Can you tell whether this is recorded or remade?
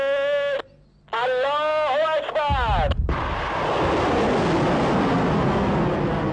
recorded